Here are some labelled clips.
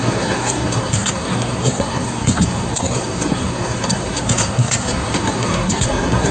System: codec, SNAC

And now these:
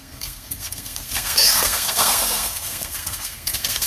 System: codec, SNAC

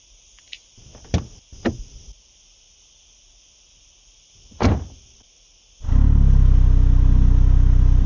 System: none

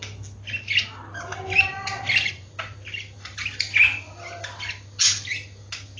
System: none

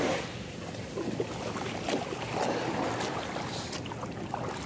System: none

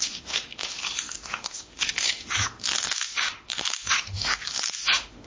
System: autoencoder, DAC-VAE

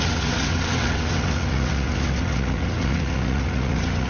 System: vocoder, WaveNeXt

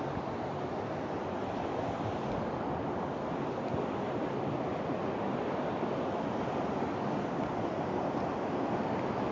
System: none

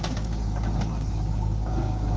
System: codec, DAC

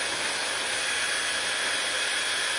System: none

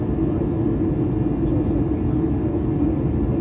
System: none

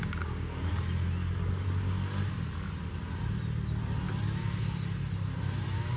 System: none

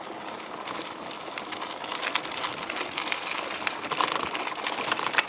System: none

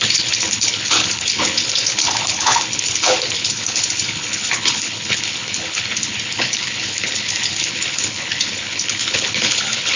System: codec, HILCodec